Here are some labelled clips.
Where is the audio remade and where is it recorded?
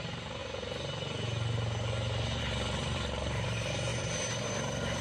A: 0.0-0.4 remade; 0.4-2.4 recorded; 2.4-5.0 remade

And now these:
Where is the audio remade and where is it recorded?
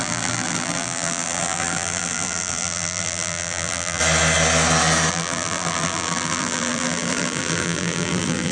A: 0.0-4.0 remade; 4.0-5.1 recorded; 5.1-8.5 remade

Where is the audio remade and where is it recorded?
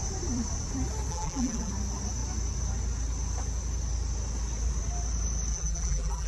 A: 0.0-1.1 recorded; 1.1-1.7 remade; 1.7-5.5 recorded; 5.5-6.3 remade